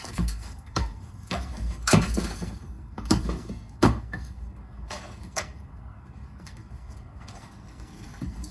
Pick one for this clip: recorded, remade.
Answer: remade